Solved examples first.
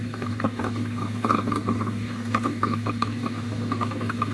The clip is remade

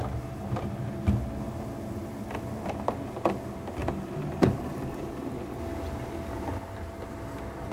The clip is recorded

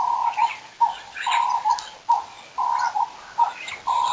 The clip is recorded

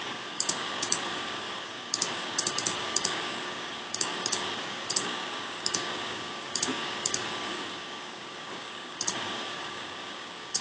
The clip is remade